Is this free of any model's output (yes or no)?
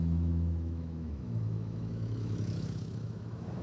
no